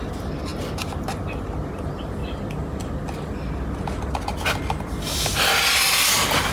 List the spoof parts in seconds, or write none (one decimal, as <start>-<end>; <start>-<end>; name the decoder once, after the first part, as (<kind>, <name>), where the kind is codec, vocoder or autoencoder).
none